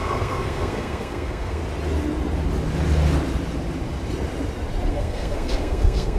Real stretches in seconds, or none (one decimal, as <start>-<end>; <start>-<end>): 1.6-4.9